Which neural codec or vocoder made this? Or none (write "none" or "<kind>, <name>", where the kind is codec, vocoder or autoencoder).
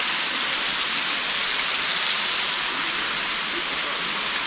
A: none